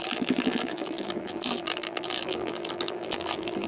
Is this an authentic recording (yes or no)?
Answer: no